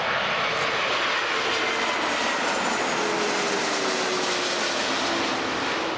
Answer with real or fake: real